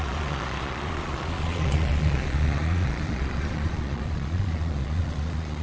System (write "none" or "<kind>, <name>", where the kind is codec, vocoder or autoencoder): vocoder, Vocos